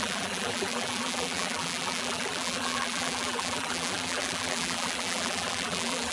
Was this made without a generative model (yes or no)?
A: no